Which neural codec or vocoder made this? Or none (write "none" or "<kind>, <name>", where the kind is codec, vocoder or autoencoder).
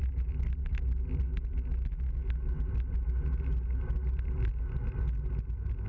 none